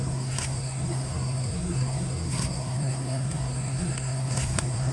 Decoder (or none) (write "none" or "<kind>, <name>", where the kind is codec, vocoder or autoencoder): codec, SNAC